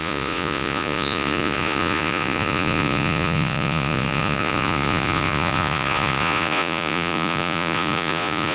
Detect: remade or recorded remade